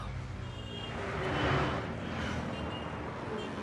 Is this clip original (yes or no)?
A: yes